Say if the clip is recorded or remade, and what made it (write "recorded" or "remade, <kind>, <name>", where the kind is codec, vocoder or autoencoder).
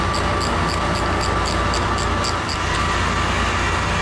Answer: recorded